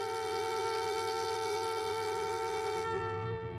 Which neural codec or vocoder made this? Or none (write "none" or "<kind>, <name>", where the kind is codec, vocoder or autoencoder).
vocoder, BigVGAN v2